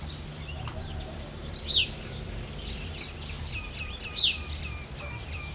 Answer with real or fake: fake